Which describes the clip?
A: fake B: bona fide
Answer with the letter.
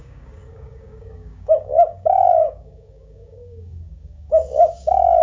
A